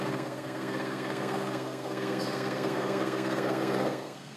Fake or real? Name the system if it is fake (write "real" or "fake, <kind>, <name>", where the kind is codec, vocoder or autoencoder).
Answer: fake, codec, SNAC